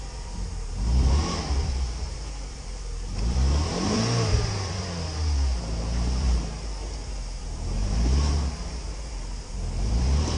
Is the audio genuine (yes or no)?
no